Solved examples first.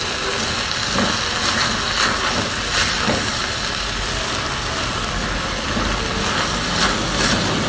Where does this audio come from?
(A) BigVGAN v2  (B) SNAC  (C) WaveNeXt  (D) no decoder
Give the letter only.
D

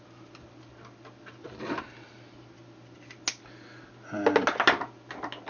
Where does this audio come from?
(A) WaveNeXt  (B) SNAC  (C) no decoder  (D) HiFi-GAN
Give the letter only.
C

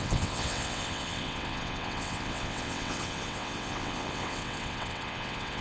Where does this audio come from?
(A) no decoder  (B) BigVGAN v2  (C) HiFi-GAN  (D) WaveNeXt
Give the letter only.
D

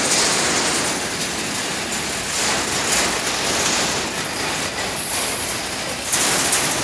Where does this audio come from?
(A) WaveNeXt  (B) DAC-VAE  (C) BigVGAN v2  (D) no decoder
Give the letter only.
D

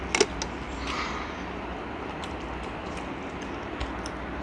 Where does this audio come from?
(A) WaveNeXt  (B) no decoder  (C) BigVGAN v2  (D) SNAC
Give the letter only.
B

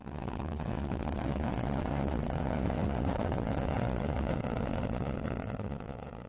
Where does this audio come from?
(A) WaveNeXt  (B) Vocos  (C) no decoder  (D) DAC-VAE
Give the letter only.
A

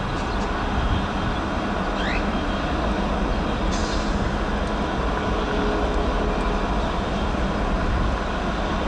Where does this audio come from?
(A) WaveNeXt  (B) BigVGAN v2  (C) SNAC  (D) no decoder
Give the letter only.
D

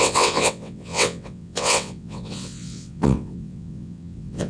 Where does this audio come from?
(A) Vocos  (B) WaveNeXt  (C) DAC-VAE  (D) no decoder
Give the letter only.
B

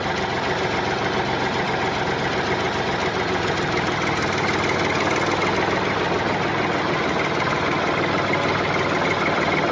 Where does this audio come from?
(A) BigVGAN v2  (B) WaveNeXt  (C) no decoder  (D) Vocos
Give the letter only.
C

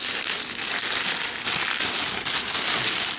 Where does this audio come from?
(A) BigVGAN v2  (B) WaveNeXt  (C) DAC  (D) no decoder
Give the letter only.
D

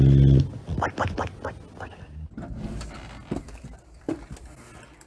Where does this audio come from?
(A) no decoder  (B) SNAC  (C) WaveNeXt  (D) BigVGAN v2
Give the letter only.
A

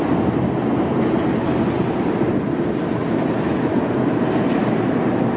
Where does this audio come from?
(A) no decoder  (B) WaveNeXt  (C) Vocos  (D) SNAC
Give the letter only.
A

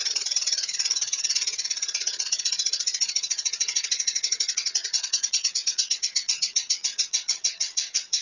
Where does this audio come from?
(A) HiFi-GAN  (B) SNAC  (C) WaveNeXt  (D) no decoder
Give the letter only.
C